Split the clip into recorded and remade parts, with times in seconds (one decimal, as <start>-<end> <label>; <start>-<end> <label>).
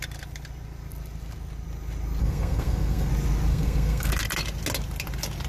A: 0.0-2.2 recorded; 2.2-3.1 remade; 3.1-3.5 recorded; 3.5-4.1 remade; 4.1-5.5 recorded